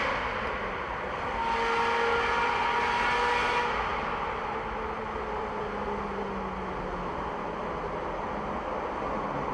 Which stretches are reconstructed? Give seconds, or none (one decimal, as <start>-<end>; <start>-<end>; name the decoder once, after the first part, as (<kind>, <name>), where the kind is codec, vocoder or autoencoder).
none